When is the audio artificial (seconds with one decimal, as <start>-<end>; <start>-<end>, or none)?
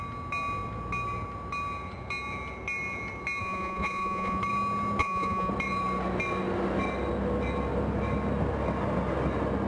3.4-4.4; 5.0-5.5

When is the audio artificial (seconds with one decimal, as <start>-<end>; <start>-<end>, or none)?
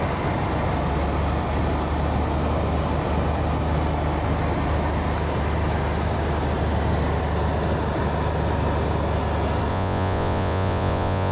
9.7-11.3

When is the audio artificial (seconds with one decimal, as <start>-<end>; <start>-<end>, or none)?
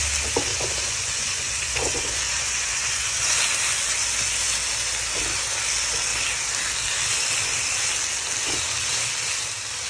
0.5-3.4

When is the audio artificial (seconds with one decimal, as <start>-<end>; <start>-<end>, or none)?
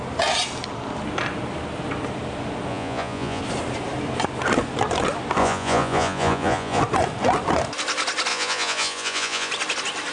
2.7-3.4; 5.4-6.8; 8.3-9.5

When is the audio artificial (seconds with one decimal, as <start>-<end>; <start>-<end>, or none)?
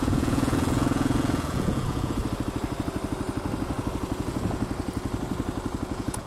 0.0-2.2; 5.8-6.3